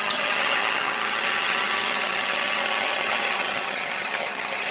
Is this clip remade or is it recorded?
remade